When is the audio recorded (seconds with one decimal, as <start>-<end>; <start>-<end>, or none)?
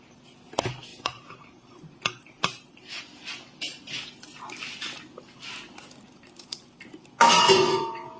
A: 0.0-0.9; 3.0-6.1; 6.8-8.2